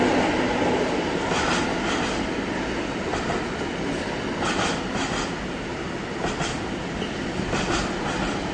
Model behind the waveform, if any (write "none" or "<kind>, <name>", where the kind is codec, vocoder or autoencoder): none